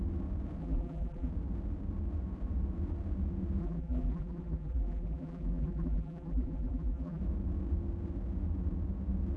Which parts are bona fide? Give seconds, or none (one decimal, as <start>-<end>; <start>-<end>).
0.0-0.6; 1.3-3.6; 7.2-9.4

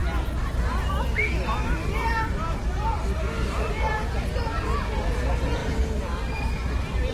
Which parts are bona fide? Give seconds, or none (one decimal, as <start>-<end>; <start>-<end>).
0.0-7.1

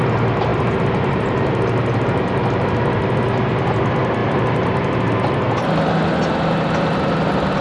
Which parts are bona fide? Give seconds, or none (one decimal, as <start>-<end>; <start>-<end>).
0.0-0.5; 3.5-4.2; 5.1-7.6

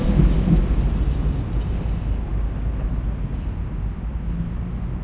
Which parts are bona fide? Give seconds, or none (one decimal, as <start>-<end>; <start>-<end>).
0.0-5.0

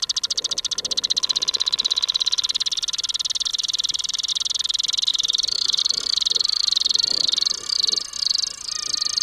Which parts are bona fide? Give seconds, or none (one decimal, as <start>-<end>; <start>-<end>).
0.0-3.5; 4.3-5.1; 5.8-9.2

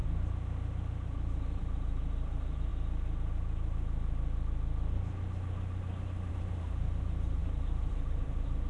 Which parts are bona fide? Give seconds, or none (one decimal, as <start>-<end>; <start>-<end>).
0.0-1.6; 2.7-6.3